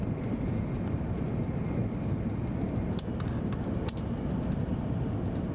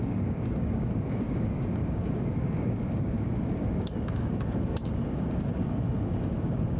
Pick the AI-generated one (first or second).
second